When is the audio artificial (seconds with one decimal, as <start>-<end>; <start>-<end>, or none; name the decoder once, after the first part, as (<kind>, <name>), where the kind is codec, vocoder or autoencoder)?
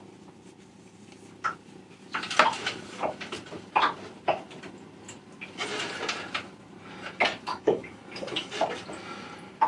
7.5-8.5 (codec, DAC)